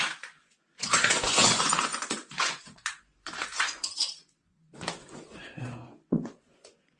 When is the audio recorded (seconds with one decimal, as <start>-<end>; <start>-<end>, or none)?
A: none